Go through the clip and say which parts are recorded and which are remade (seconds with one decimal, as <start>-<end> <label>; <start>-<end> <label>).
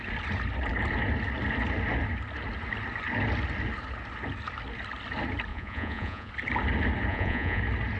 0.0-5.5 recorded; 5.5-6.3 remade; 6.3-7.1 recorded; 7.1-7.6 remade; 7.6-8.0 recorded